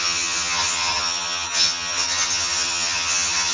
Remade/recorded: remade